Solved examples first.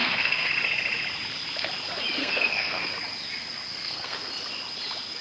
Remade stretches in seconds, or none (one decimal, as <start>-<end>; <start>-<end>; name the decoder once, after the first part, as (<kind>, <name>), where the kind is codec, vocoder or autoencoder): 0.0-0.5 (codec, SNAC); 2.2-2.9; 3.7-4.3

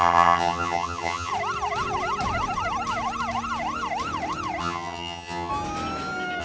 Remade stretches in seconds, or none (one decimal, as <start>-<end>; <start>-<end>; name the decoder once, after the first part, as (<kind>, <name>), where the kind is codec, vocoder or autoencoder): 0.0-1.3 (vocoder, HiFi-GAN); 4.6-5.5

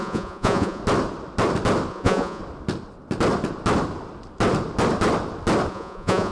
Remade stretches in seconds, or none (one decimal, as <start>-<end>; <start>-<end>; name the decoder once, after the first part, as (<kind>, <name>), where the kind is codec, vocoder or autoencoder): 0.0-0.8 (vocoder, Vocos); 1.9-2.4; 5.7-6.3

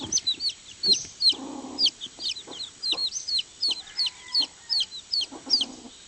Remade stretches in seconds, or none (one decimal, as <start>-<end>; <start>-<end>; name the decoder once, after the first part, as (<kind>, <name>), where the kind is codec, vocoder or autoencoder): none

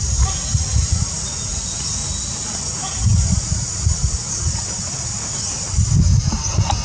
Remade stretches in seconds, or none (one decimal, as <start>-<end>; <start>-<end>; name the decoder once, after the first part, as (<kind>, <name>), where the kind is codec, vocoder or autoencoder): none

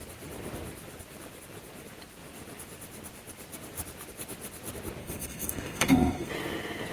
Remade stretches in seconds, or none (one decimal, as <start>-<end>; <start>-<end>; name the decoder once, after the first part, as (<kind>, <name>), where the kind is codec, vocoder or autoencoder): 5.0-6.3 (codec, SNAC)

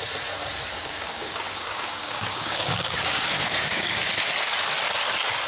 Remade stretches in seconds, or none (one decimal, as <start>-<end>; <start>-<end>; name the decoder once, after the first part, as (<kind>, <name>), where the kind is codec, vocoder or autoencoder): 0.8-4.1 (codec, DAC)

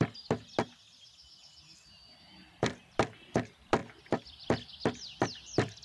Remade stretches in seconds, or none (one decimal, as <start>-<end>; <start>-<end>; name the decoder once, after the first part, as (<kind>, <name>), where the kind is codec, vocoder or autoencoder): none